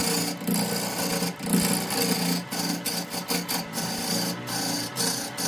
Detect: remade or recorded recorded